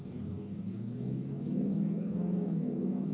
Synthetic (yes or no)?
yes